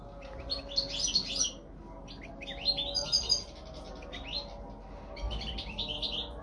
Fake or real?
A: real